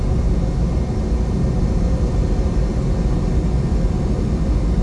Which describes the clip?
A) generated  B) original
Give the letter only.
B